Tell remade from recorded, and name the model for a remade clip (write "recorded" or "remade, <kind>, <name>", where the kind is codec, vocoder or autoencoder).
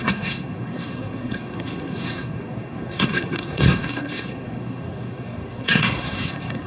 remade, codec, SNAC